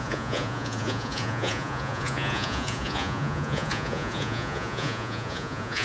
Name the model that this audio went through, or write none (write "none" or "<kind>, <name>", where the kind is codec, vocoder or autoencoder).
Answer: vocoder, Vocos